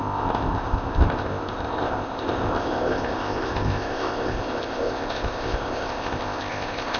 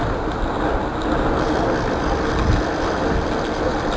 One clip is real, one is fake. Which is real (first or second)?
second